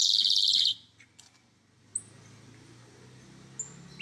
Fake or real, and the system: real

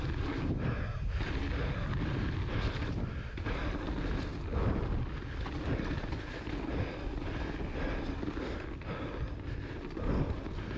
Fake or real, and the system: real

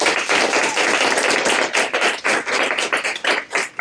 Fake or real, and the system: fake, vocoder, BigVGAN v2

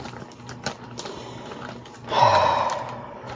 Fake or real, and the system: fake, vocoder, BigVGAN v2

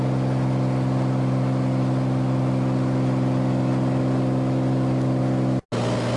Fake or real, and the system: real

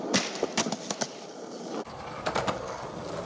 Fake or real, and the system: real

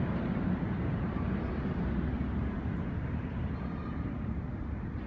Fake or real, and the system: fake, vocoder, BigVGAN v2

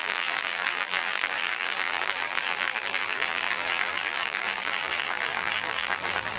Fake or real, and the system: fake, vocoder, BigVGAN v2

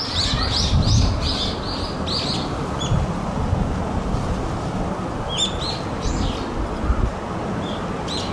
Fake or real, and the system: real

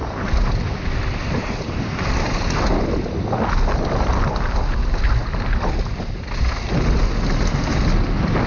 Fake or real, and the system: real